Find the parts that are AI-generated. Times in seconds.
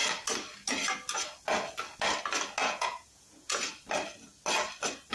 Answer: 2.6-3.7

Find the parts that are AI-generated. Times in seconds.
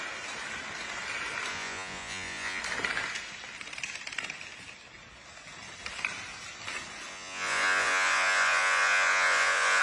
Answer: 1.5-2.6; 7.1-9.8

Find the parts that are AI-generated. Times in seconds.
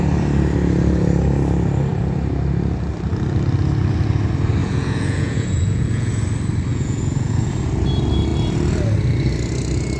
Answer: 4.6-6.1; 6.7-7.4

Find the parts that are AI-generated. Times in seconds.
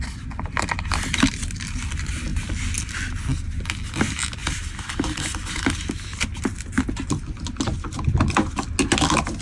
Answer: none